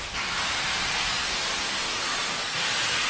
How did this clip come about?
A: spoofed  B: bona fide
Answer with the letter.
B